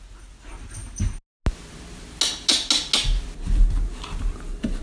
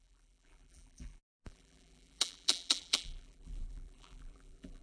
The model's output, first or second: second